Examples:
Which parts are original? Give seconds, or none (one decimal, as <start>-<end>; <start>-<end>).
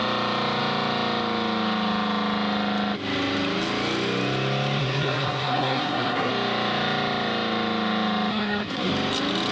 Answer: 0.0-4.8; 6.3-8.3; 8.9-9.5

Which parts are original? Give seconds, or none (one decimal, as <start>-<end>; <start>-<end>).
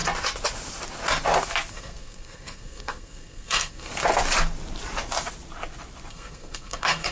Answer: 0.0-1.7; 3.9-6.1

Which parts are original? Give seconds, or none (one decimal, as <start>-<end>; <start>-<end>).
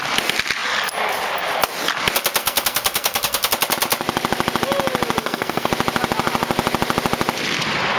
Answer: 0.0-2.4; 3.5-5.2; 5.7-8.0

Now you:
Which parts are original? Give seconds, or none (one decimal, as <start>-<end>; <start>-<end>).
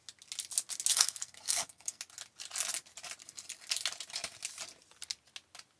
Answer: 0.0-0.9; 2.0-5.8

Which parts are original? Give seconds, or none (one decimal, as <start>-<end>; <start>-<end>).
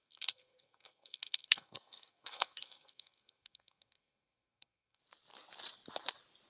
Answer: 5.0-6.5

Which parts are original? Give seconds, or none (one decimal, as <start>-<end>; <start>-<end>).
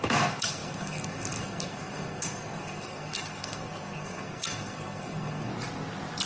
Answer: 5.5-6.3